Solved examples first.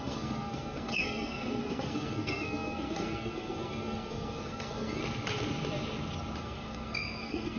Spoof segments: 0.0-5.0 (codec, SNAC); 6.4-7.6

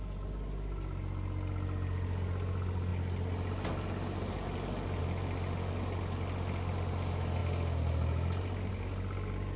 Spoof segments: none

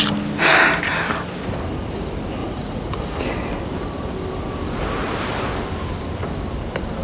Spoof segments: 2.4-3.2 (vocoder, Vocos)

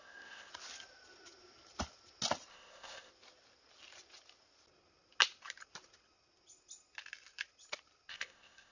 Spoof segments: 0.0-0.5 (codec, ZipCodec); 2.5-3.1; 8.1-8.7

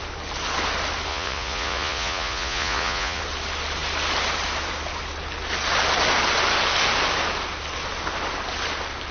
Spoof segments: 1.1-3.2 (vocoder, Vocos)

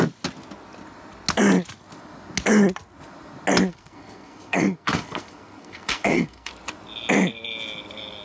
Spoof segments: 3.7-6.5 (codec, SNAC)

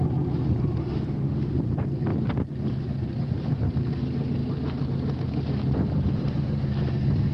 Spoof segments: 0.8-1.5 (autoencoder, DAC-VAE)

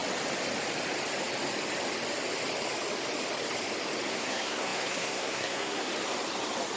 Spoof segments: 4.1-5.9 (codec, SNAC)